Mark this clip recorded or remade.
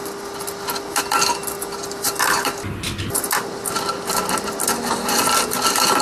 recorded